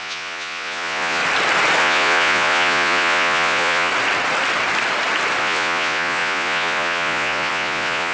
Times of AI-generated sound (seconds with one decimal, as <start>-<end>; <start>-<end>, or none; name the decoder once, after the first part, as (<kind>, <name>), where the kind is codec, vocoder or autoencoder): 0.0-1.2 (vocoder, Vocos); 1.8-3.9; 5.4-8.1